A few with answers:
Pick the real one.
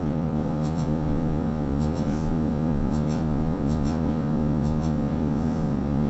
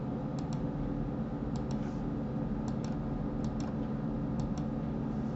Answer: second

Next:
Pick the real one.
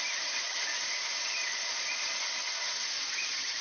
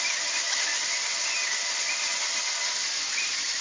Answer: second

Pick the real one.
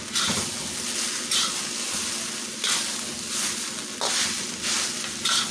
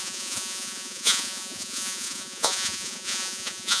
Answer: first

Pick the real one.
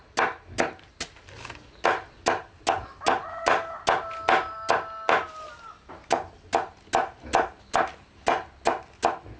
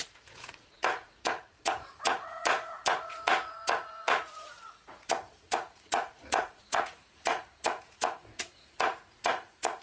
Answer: first